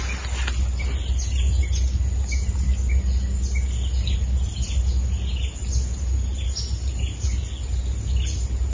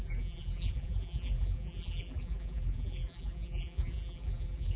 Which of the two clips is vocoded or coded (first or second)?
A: second